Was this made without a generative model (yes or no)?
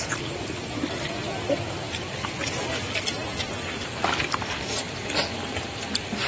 yes